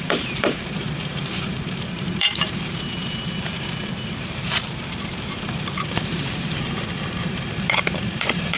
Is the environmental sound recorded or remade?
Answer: remade